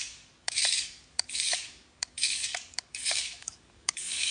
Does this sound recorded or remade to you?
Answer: remade